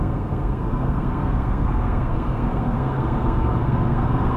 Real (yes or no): no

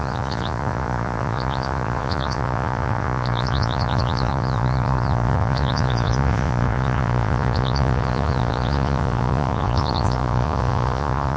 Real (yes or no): no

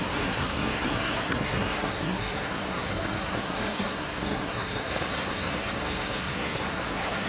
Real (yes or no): no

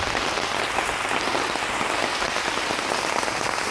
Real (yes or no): yes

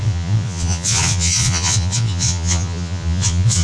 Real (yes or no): no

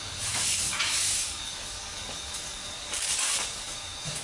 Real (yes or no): no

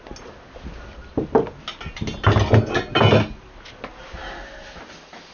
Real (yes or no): yes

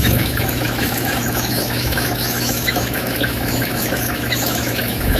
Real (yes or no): no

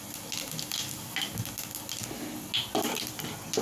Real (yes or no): yes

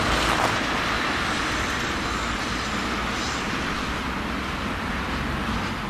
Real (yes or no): yes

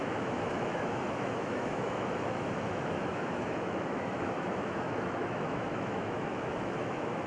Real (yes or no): no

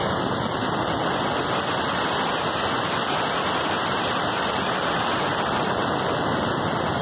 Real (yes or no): yes